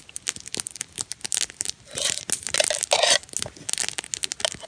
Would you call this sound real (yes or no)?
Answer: yes